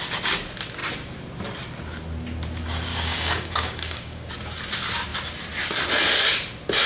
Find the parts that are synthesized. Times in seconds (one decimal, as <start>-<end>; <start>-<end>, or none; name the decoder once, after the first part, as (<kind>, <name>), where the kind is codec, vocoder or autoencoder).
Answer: 2.9-4.3 (codec, DAC)